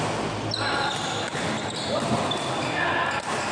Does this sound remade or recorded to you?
recorded